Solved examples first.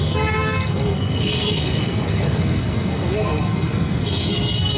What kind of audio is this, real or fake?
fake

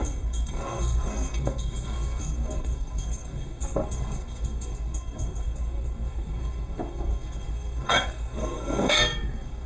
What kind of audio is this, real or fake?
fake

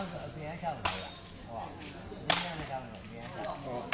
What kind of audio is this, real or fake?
real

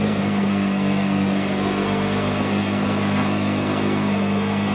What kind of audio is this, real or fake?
fake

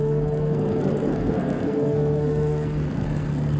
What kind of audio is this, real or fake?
fake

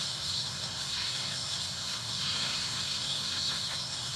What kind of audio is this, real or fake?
fake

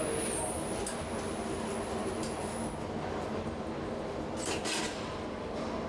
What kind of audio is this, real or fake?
real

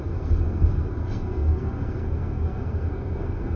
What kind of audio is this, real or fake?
fake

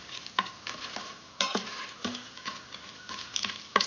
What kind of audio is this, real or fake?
real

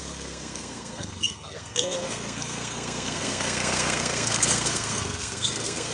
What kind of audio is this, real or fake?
fake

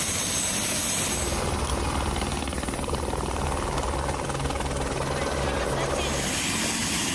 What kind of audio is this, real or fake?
real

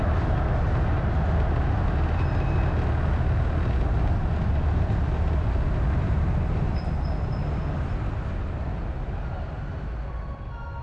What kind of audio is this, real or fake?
real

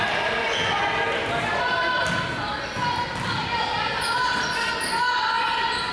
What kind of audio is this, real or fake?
real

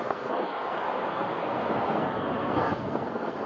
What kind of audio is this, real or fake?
fake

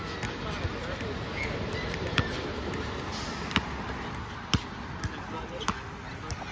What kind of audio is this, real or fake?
real